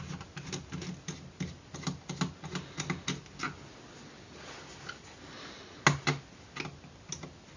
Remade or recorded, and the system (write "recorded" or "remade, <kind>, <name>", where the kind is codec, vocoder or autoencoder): recorded